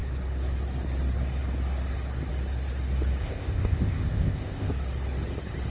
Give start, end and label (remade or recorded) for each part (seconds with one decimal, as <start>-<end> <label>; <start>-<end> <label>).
0.0-3.2 recorded; 3.2-4.7 remade; 4.7-5.7 recorded